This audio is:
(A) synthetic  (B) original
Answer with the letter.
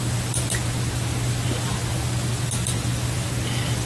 B